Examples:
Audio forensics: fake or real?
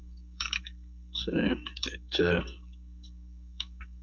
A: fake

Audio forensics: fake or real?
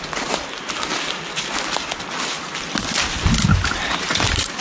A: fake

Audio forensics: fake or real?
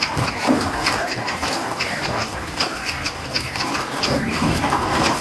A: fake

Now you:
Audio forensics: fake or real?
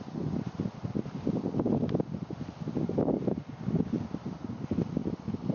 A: real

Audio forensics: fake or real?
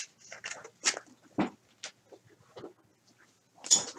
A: real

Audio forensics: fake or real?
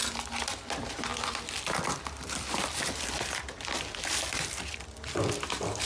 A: real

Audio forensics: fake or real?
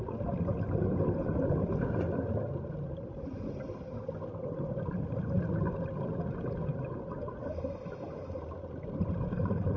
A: real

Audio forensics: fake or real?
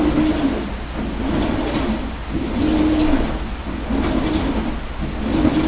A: real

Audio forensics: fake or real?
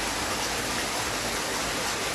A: real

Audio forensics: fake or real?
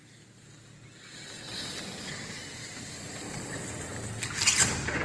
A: real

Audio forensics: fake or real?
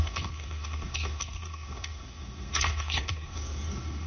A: fake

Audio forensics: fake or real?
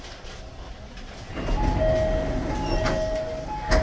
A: real